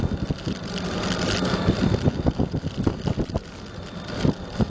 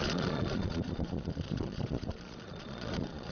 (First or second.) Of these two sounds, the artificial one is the second